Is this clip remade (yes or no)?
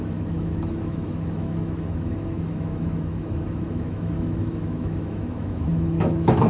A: yes